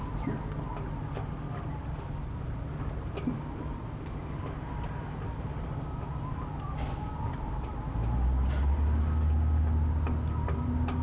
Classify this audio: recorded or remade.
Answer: recorded